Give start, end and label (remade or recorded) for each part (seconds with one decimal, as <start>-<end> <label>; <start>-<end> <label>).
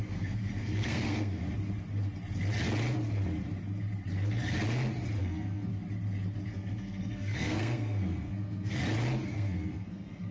0.0-1.4 remade; 1.4-5.2 recorded; 5.2-5.7 remade; 5.7-6.5 recorded; 6.5-8.8 remade; 8.8-9.3 recorded; 9.3-10.3 remade